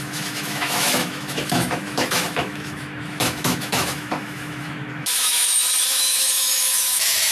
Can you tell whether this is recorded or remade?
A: remade